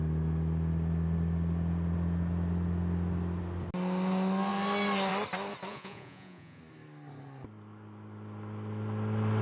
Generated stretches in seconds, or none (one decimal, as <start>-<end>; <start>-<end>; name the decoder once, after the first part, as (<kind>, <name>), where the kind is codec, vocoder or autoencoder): 5.7-6.6 (vocoder, Vocos)

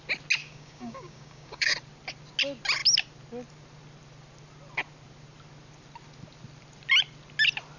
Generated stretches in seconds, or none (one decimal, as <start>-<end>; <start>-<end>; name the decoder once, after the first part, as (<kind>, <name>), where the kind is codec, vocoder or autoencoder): 0.4-1.7 (codec, DAC)

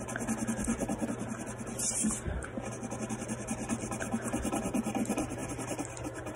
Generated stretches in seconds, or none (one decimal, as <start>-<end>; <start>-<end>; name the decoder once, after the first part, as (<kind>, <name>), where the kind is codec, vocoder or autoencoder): none

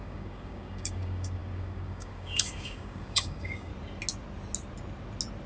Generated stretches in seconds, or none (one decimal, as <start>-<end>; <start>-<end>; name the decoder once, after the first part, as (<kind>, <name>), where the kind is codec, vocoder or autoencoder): 0.0-3.7 (codec, DAC)

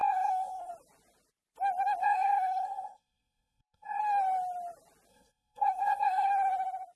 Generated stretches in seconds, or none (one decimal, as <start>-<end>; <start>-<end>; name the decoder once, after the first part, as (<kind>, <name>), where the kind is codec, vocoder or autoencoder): 0.0-0.7 (codec, SNAC); 2.0-4.0; 5.1-6.3

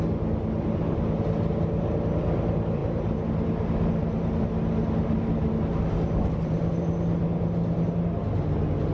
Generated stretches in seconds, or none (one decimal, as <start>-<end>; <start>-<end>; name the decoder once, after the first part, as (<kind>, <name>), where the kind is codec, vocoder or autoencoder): none